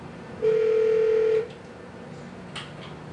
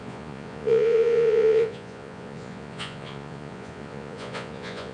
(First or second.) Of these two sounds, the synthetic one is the second